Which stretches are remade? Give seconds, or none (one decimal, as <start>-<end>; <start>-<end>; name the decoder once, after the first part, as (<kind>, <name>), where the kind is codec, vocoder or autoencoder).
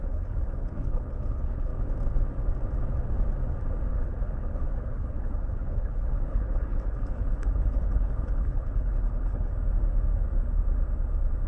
0.0-1.7 (codec, HILCodec); 3.9-9.5